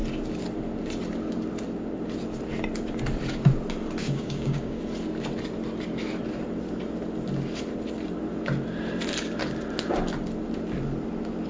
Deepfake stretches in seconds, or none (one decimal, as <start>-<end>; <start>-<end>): 4.0-4.8